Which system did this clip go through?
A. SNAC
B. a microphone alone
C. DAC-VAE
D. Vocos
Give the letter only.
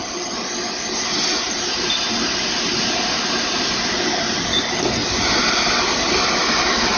B